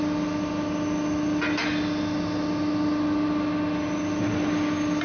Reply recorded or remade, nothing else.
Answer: recorded